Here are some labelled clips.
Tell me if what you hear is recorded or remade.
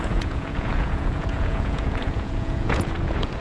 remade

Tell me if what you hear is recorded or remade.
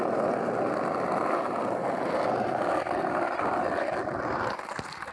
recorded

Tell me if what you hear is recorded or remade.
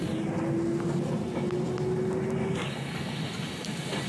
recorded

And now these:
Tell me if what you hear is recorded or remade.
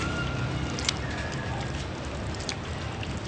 recorded